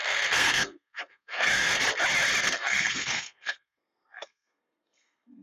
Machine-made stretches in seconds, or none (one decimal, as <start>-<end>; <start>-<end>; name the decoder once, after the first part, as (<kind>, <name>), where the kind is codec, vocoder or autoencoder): 0.0-1.8 (codec, SNAC); 2.4-5.4